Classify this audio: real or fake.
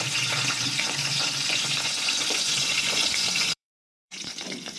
fake